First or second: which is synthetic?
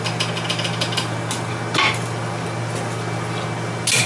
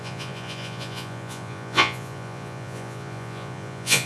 second